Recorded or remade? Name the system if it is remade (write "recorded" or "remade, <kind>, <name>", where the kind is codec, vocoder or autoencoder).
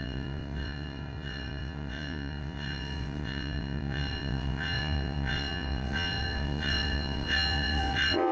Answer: remade, vocoder, WaveNeXt